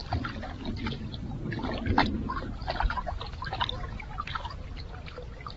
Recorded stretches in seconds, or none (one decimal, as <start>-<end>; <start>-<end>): 0.0-5.6